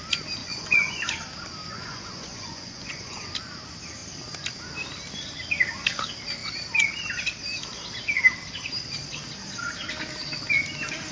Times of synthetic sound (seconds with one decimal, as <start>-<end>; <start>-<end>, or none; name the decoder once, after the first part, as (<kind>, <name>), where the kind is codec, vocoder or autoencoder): 0.4-1.0 (vocoder, Vocos); 1.6-3.3